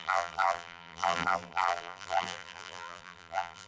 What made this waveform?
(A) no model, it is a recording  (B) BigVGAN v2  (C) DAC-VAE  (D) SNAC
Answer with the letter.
B